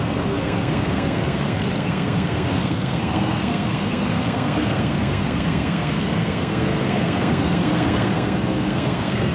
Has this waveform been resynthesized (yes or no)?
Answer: yes